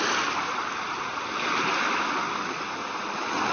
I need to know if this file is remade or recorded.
recorded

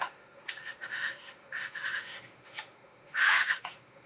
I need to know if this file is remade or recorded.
remade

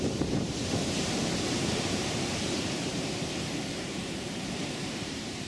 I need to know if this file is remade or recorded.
remade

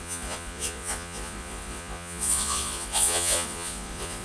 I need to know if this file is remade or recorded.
remade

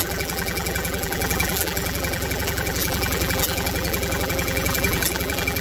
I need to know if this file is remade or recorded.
remade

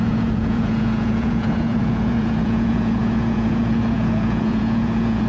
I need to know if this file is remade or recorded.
remade